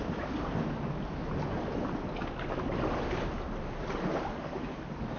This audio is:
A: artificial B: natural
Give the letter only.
B